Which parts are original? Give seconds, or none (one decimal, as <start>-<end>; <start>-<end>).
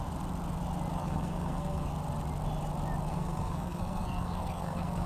0.0-0.9; 1.9-3.1